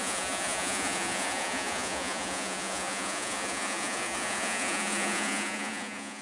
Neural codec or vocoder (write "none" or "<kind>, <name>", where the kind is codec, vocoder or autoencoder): vocoder, Vocos